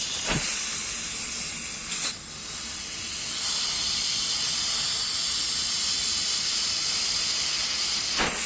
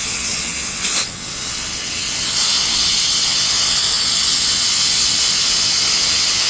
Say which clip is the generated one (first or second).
second